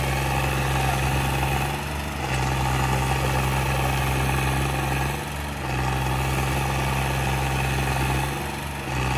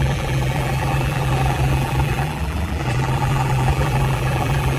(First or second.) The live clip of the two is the first